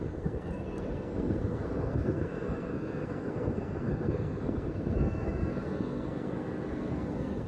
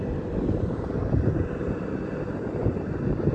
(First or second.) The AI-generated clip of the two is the first